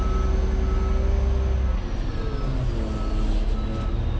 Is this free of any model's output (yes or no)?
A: yes